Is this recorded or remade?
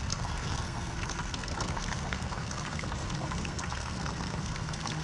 remade